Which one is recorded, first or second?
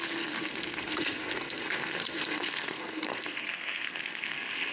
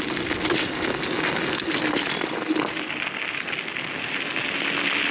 second